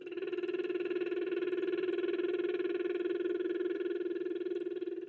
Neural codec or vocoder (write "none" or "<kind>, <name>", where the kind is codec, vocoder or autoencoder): vocoder, BigVGAN v2